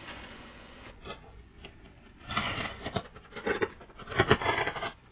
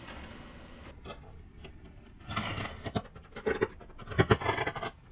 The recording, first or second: second